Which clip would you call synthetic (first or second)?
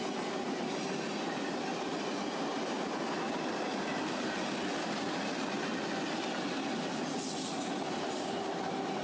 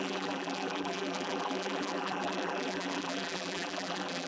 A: second